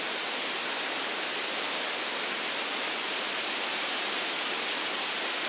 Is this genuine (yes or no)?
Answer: yes